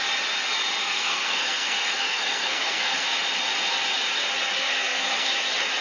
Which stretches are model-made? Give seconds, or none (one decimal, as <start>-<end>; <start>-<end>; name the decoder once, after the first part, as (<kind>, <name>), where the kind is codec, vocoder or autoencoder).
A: 0.8-3.2 (codec, SNAC); 4.6-5.3